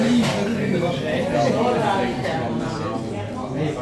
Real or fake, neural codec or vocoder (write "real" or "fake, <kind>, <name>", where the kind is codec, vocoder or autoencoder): real